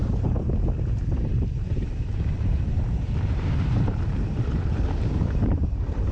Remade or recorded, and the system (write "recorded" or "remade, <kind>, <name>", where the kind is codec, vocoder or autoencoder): remade, vocoder, BigVGAN v2